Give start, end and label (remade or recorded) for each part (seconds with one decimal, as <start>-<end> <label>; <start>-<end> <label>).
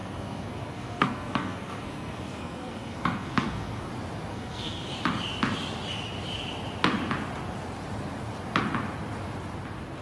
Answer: 0.0-3.9 remade; 3.9-4.3 recorded; 4.3-4.9 remade; 4.9-10.0 recorded